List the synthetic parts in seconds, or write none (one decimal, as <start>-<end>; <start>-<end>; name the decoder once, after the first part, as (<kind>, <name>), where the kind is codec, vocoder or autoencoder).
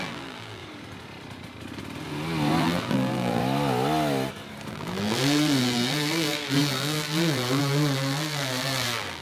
0.0-0.6 (vocoder, BigVGAN v2); 2.6-3.4; 4.7-9.2